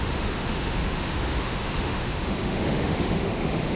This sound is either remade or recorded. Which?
remade